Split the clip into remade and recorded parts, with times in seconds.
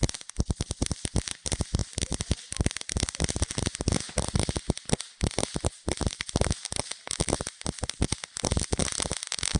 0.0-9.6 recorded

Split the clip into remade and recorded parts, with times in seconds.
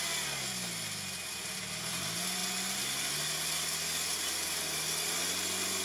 0.0-5.8 recorded